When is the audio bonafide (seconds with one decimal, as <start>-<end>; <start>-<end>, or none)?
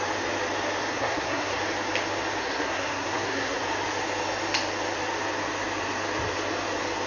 0.0-0.9; 1.6-2.4; 3.6-7.1